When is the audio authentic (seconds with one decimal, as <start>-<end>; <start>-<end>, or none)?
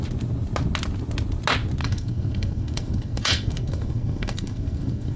0.0-1.8